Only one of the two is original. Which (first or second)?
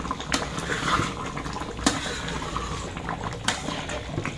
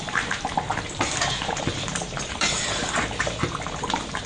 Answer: first